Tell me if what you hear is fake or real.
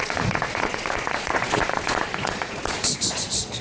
fake